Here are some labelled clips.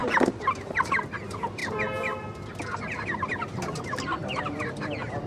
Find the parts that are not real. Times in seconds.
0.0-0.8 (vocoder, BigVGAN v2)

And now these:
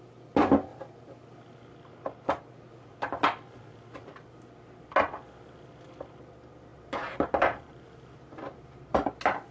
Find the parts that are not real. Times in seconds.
6.7-9.1 (vocoder, BigVGAN v2)

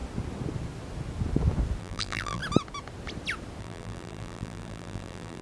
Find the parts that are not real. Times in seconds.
1.8-2.4 (vocoder, BigVGAN v2); 3.6-5.4

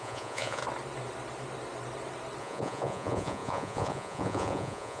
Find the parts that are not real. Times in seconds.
0.0-0.6 (vocoder, Vocos); 2.4-5.0

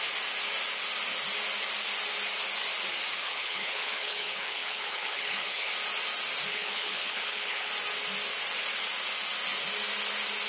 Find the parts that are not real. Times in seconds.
3.2-5.7 (codec, HILCodec); 6.5-7.7

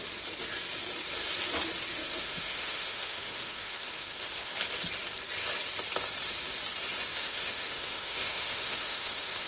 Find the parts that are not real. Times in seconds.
1.9-4.5 (autoencoder, DAC-VAE); 7.2-9.5